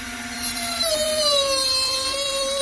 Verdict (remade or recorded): remade